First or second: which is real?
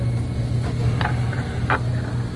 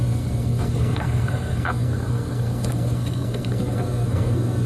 first